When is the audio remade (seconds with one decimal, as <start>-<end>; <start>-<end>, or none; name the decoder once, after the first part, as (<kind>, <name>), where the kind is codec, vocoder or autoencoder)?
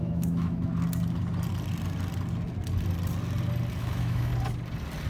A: 0.0-0.7 (autoencoder, DAC-VAE); 3.8-4.3